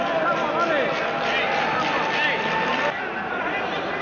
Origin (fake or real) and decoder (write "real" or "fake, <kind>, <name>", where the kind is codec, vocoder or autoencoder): real